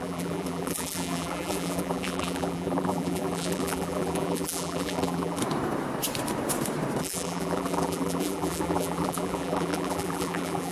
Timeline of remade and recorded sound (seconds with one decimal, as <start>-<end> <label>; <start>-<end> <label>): 0.0-5.4 remade; 5.4-7.0 recorded; 7.0-10.7 remade